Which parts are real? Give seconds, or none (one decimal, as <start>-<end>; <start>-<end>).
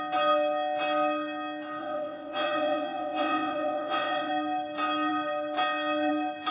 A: 0.0-1.8; 4.3-6.5